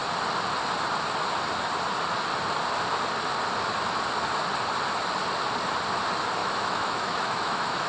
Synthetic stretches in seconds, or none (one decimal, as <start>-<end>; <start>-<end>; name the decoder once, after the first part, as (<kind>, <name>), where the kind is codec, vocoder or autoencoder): 6.4-7.9 (autoencoder, DAC-VAE)